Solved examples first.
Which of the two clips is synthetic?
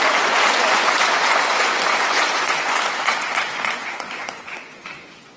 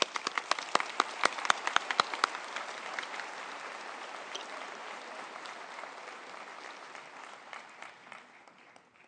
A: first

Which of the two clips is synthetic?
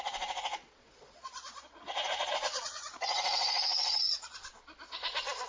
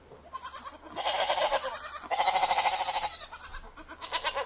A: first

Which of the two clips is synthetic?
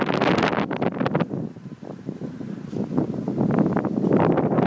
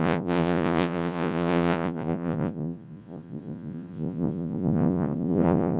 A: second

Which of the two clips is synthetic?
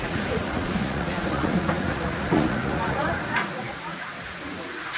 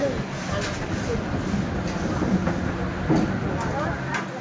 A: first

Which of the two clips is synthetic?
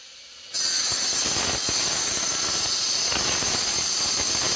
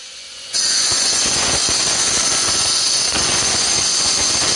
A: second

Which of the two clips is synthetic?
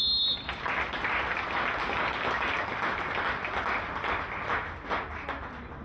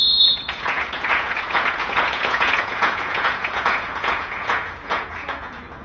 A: second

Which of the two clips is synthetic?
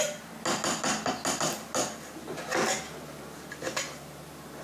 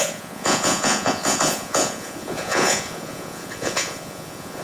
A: second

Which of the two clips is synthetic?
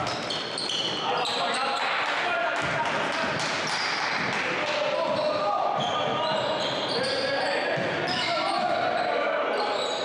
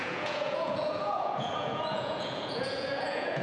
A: second